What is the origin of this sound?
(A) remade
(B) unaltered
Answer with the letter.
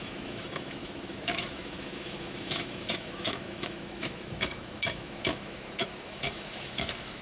A